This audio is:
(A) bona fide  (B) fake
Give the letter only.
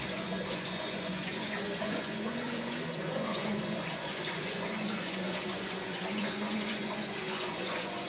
B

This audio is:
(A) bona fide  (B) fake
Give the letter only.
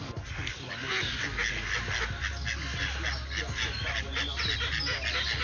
A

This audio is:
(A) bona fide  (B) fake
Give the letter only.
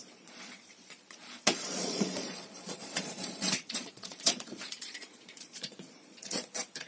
B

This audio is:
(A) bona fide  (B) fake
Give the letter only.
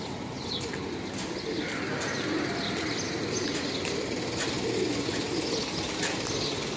A